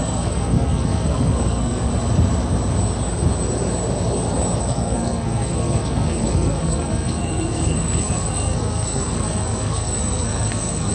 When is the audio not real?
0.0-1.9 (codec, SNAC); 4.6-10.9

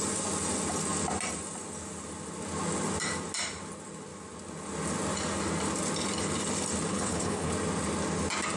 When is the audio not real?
6.9-7.5 (codec, HILCodec)

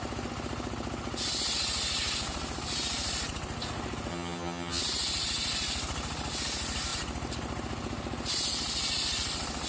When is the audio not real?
4.1-4.8 (vocoder, HiFi-GAN)